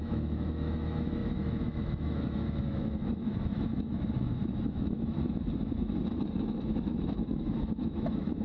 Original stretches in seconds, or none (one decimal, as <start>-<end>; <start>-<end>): none

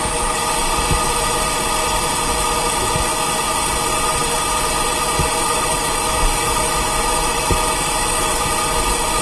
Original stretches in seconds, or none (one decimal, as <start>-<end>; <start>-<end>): 0.0-5.4; 8.3-9.2

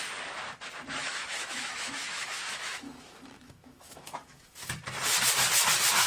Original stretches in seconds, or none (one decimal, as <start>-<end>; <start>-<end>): 0.0-1.0; 4.7-6.1

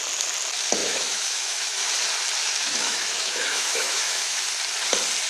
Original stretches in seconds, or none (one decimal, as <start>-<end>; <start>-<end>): 0.0-0.8; 1.9-2.4; 4.5-5.3

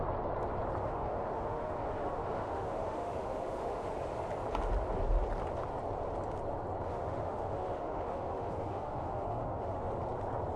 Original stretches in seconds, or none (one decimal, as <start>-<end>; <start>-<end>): 0.0-0.8; 3.9-6.9; 9.9-10.6

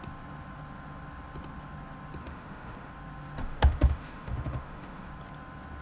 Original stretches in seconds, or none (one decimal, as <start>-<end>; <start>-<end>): 0.0-2.2; 2.9-3.4; 5.1-5.8